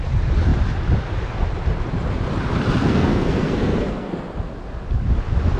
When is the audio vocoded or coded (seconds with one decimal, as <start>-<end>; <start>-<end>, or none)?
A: 2.8-4.1